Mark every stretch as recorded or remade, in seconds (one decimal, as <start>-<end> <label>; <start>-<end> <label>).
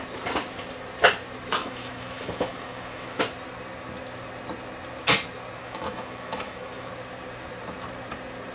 0.0-1.6 recorded; 1.6-3.2 remade; 3.2-5.6 recorded; 5.6-6.9 remade; 6.9-8.5 recorded